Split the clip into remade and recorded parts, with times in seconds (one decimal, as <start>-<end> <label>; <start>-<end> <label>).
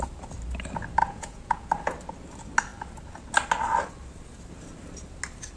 0.0-1.0 recorded; 1.0-1.7 remade; 1.7-5.6 recorded